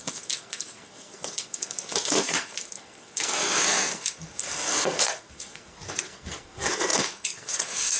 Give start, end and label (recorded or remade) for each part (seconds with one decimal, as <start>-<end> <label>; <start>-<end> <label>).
0.0-8.0 remade